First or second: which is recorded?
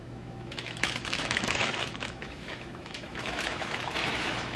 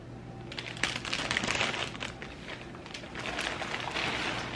second